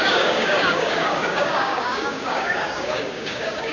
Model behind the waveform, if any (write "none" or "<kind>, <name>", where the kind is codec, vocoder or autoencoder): codec, DAC